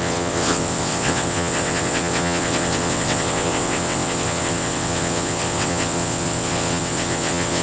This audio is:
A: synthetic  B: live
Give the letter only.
A